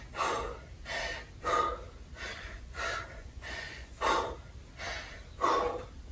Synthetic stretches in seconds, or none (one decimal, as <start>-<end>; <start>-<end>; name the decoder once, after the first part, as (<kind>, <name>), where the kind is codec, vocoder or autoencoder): 2.3-2.8 (vocoder, Vocos); 3.2-4.0